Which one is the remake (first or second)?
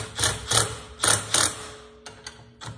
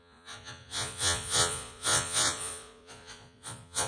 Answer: second